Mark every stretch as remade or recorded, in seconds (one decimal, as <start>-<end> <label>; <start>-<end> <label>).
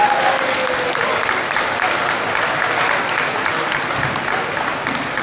0.0-5.2 recorded